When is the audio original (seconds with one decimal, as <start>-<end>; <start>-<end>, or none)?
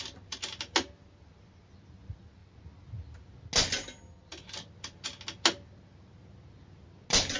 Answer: 0.0-7.4